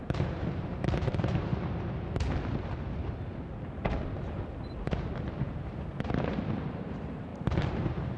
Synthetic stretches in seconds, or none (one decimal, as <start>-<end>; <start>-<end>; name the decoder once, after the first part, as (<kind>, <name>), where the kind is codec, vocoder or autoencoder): 0.0-1.5 (vocoder, BigVGAN v2); 6.1-8.2